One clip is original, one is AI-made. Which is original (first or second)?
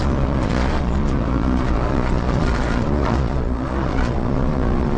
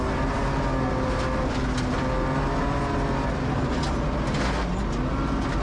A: second